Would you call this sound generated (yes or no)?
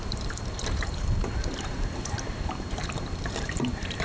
yes